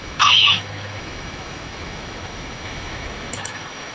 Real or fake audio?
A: fake